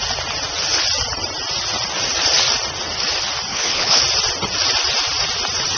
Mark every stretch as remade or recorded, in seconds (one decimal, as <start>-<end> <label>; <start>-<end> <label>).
0.0-3.5 recorded; 3.5-4.0 remade; 4.0-5.8 recorded